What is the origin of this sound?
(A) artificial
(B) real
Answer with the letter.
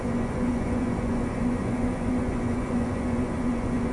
A